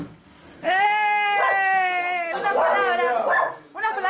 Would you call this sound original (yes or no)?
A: yes